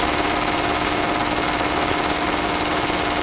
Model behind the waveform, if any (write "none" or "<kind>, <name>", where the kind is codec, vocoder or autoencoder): none